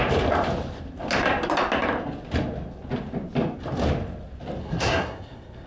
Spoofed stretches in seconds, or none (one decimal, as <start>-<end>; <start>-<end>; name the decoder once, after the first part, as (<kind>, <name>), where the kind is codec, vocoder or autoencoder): 4.6-5.7 (codec, SNAC)